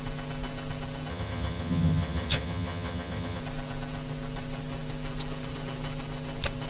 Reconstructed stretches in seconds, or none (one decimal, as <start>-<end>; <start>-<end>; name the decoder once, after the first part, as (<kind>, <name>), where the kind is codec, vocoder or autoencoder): 1.1-3.4 (vocoder, HiFi-GAN)

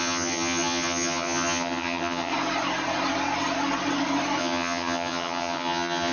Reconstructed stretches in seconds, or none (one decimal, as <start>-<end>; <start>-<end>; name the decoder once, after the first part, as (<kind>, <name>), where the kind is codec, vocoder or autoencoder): 0.0-2.3 (vocoder, HiFi-GAN); 4.4-6.1